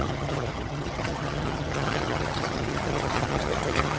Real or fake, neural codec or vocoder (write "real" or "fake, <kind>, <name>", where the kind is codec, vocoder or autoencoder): fake, vocoder, HiFi-GAN